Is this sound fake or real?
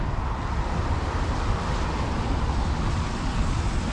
real